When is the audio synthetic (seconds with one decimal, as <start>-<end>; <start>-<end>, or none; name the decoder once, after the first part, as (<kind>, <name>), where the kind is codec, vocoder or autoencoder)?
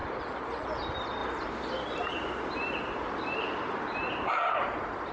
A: none